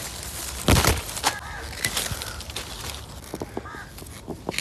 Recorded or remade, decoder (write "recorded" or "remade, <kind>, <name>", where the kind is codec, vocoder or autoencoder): recorded